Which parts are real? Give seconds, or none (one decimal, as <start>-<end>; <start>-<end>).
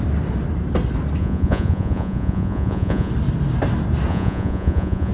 0.0-1.2; 3.1-4.1